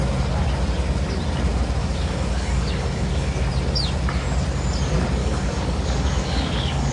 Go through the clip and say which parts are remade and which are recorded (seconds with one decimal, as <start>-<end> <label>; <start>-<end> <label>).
0.0-1.8 recorded; 1.8-3.3 remade; 3.3-5.2 recorded; 5.2-6.9 remade

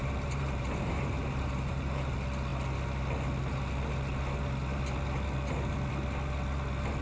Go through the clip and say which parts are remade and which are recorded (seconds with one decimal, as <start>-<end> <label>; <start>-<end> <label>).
0.0-2.1 remade; 2.1-7.0 recorded